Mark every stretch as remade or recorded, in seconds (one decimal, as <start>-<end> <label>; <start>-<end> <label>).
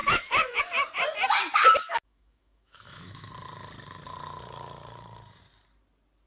0.0-0.6 remade; 0.6-1.8 recorded; 1.8-3.3 remade; 3.3-6.3 recorded